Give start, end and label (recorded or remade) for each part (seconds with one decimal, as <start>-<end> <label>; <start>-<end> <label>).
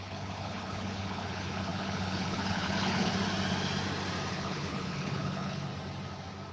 0.0-3.1 remade; 3.1-4.3 recorded; 4.3-5.7 remade; 5.7-6.5 recorded